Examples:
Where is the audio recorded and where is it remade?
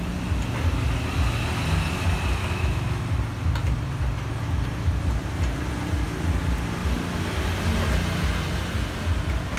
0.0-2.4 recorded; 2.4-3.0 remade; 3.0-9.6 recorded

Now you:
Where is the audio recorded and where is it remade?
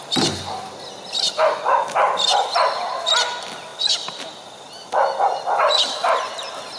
0.0-6.8 recorded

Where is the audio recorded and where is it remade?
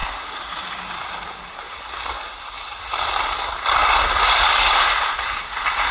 0.0-5.9 recorded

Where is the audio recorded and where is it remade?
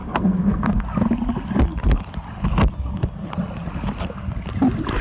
0.0-0.8 remade; 0.8-5.0 recorded